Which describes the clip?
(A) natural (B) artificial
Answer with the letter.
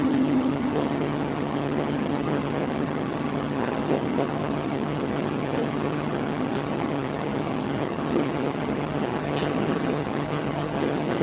B